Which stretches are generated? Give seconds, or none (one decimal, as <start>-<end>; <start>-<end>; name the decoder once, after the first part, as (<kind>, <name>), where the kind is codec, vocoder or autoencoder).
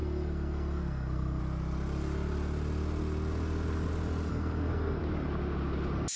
0.0-1.4 (codec, SNAC); 4.3-5.0